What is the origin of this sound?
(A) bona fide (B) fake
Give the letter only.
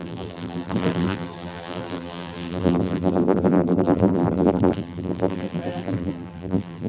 B